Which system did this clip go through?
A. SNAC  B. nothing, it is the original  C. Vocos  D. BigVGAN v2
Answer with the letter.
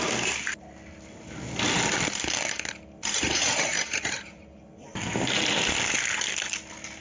B